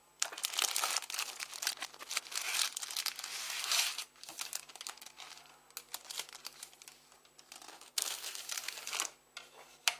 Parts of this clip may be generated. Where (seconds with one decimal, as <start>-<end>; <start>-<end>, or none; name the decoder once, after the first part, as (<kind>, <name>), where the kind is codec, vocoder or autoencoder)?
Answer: 7.7-8.4 (codec, SNAC)